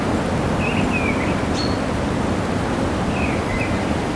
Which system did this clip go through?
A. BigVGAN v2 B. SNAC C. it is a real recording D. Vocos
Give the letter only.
C